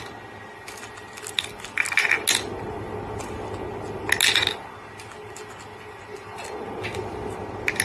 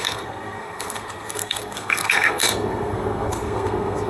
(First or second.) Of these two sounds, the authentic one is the first